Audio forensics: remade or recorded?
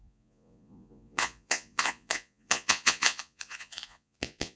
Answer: remade